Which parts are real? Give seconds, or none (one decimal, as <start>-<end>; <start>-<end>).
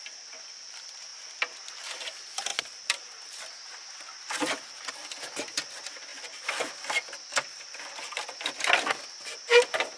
0.0-2.5; 4.9-6.1; 8.6-10.0